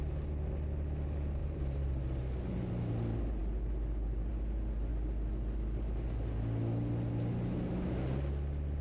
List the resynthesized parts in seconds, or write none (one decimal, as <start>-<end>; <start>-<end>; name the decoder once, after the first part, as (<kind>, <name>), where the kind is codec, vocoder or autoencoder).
1.4-2.0 (vocoder, BigVGAN v2)